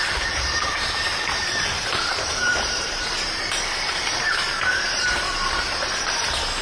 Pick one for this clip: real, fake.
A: fake